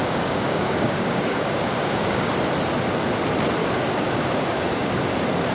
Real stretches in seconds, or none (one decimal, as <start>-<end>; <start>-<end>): 2.3-3.6; 4.9-5.5